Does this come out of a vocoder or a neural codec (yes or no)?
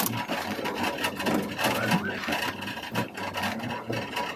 no